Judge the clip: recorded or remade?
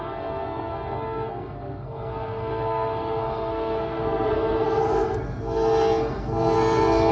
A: remade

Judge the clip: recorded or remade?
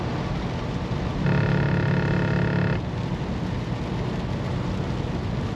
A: recorded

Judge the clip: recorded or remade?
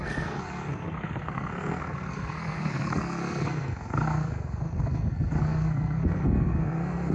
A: remade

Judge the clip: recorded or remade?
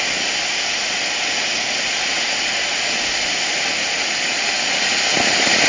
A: recorded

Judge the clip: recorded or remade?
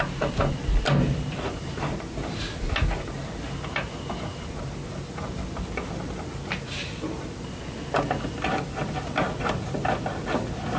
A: recorded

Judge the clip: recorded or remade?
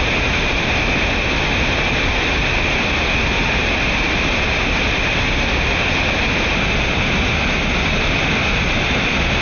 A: recorded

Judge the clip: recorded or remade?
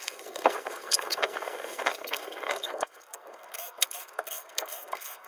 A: remade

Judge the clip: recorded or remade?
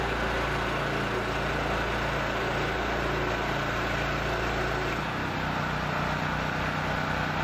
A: recorded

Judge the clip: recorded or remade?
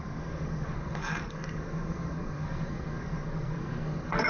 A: remade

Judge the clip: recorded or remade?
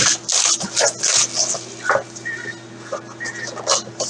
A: recorded